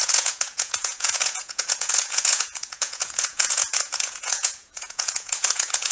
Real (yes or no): no